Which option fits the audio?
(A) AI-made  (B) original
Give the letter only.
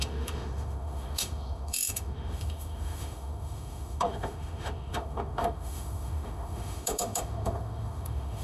A